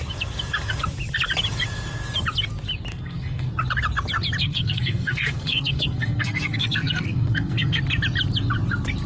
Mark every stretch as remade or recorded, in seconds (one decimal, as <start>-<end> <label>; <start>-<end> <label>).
0.0-2.9 recorded; 2.9-3.5 remade; 3.5-4.4 recorded; 4.4-7.8 remade; 7.8-9.1 recorded